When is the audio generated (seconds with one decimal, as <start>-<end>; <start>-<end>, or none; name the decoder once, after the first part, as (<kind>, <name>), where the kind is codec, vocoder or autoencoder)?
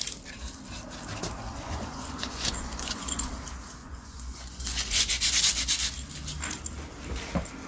1.5-3.3 (vocoder, Vocos); 3.8-5.4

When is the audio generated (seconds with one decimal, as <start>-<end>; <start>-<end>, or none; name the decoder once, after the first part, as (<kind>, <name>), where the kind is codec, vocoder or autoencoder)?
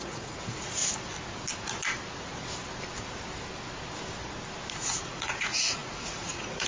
0.0-0.8 (vocoder, Vocos); 4.7-6.7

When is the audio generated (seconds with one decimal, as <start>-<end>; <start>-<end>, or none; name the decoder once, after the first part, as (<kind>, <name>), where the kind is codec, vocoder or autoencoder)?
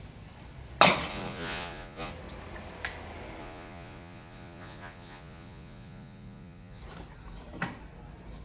1.1-2.1 (vocoder, Vocos); 3.4-6.8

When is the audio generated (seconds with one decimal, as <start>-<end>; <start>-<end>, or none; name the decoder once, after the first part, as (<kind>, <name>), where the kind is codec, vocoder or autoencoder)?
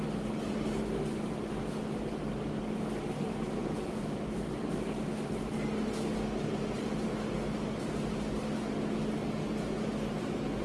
3.6-4.2 (vocoder, Vocos)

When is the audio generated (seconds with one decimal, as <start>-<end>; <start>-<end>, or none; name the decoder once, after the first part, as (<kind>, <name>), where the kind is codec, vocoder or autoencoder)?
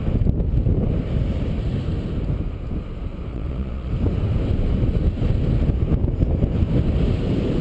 3.3-3.9 (vocoder, Vocos)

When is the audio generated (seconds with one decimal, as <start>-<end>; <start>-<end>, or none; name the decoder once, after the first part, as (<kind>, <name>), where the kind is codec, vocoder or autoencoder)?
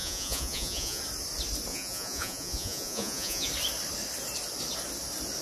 0.0-1.0 (vocoder, Vocos); 1.7-3.5